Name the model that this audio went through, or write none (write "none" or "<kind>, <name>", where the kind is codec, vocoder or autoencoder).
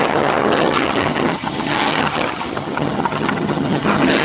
vocoder, HiFi-GAN